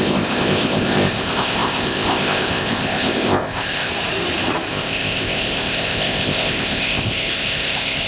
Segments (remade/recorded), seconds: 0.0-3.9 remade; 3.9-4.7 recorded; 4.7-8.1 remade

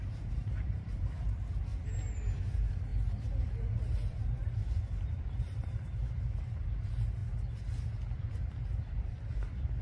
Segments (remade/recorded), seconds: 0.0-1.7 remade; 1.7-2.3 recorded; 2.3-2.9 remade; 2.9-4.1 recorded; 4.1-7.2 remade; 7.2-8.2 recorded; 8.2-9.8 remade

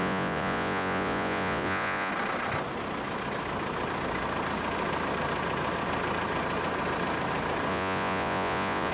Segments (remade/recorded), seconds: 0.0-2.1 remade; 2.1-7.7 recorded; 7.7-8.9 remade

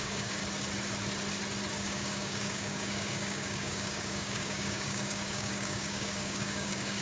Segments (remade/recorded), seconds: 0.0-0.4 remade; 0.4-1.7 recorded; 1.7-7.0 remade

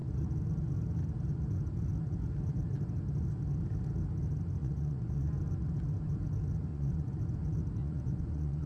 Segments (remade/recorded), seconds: 0.0-4.6 recorded; 4.6-5.3 remade; 5.3-6.7 recorded; 6.7-7.2 remade; 7.2-7.8 recorded; 7.8-8.7 remade

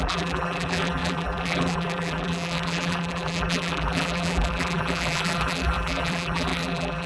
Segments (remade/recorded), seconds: 0.0-7.1 remade

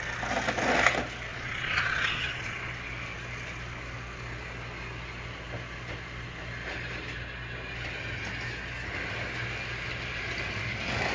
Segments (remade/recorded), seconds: 0.0-1.3 recorded; 1.3-2.7 remade; 2.7-11.1 recorded

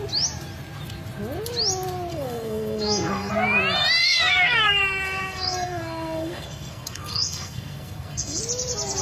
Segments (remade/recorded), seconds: 0.0-2.1 recorded; 2.1-3.3 remade; 3.3-4.0 recorded; 4.0-8.4 remade; 8.4-9.0 recorded